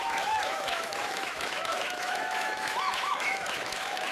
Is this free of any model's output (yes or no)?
no